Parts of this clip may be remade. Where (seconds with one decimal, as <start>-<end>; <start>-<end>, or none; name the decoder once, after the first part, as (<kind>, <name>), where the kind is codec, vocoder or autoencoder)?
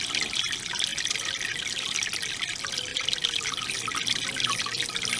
none